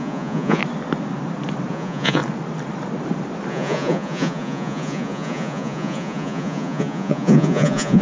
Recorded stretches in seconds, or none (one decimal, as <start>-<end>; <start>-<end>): 0.6-1.7; 2.2-3.5